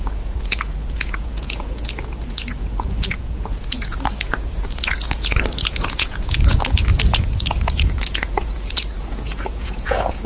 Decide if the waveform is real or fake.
fake